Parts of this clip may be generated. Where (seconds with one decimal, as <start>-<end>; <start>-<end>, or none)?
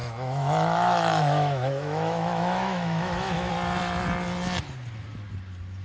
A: 0.0-3.5